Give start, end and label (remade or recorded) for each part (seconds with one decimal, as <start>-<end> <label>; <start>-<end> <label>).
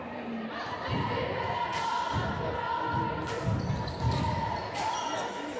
0.0-5.6 recorded